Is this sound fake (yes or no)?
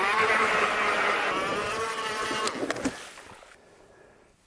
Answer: no